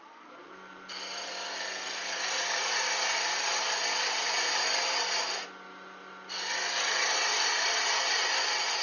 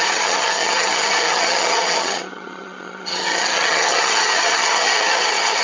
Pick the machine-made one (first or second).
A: second